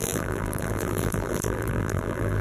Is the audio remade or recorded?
remade